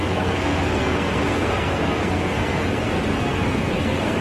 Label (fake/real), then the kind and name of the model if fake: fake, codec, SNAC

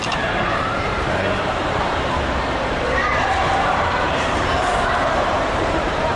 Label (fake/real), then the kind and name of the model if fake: fake, vocoder, BigVGAN v2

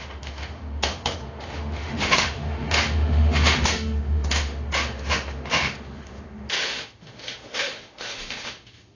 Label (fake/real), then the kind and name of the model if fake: fake, autoencoder, DAC-VAE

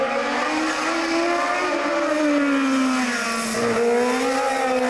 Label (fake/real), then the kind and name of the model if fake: real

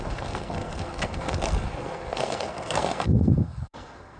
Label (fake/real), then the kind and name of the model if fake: fake, codec, SNAC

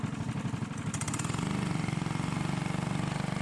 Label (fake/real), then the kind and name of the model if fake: real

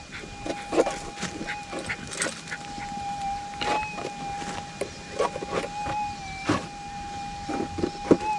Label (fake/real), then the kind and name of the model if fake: real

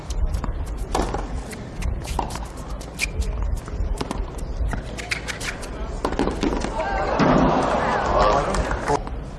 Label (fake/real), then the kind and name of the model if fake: real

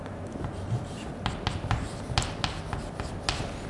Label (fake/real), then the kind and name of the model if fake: real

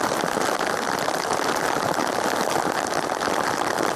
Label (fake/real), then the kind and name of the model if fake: real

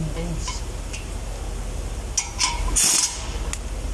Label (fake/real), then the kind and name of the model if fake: real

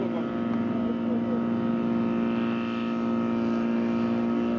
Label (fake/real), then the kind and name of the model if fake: real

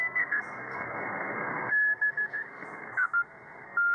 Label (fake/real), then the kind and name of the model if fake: fake, codec, SNAC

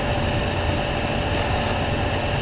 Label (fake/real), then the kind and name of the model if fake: real